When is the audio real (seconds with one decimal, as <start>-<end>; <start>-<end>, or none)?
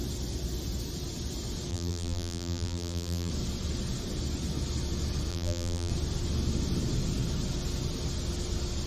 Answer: 0.0-1.7; 3.3-5.3; 5.9-8.9